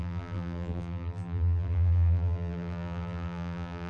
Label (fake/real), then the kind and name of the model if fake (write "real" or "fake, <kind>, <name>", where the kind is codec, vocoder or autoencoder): fake, vocoder, BigVGAN v2